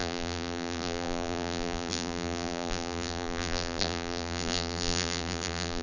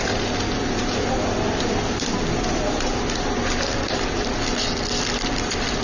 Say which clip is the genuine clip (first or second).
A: second